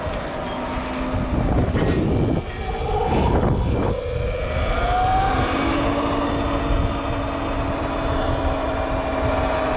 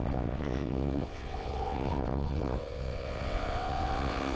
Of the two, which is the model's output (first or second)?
second